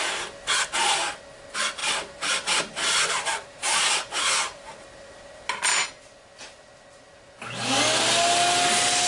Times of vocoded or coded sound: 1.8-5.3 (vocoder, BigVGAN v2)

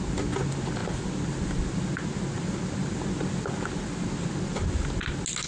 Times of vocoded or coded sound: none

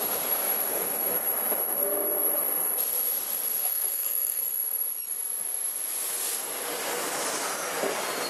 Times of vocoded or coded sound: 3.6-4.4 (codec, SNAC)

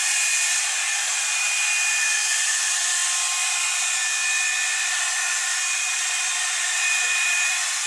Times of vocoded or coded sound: 0.0-0.7 (vocoder, BigVGAN v2); 1.1-1.6

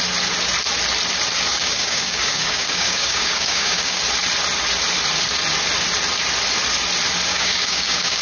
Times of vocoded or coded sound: 1.5-4.0 (codec, DAC); 7.3-8.2